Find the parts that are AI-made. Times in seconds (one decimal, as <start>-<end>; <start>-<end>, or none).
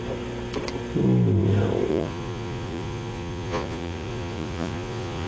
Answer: 1.9-5.3